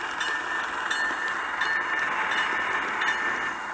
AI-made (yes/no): no